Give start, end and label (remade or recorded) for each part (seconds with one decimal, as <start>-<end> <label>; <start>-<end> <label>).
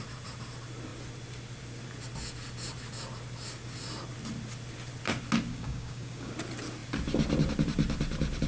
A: 0.0-5.5 recorded; 5.5-6.3 remade; 6.3-8.5 recorded